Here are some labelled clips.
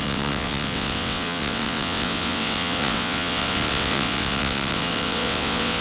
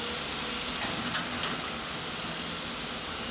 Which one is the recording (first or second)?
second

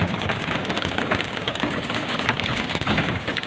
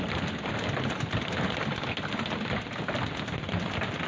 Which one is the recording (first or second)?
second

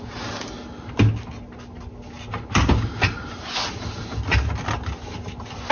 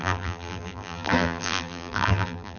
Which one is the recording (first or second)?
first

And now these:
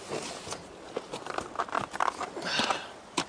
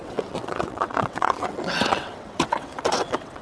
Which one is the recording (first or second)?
first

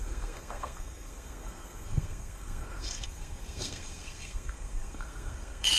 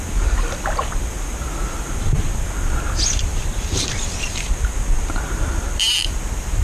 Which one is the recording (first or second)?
second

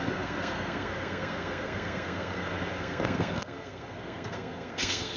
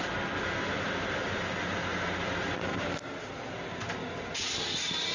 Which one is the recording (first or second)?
second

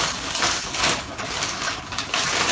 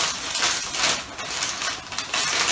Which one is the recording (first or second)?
second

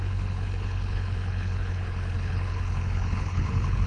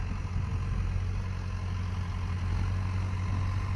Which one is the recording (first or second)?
second